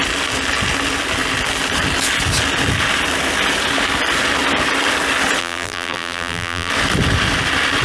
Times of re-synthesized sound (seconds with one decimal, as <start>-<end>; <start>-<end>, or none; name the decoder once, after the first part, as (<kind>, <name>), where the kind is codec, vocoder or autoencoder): 5.4-6.7 (vocoder, BigVGAN v2)